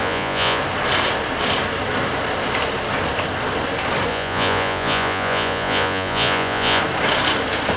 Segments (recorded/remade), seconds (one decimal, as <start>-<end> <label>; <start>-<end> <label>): 0.0-0.6 remade; 0.6-4.1 recorded; 4.1-6.8 remade; 6.8-7.8 recorded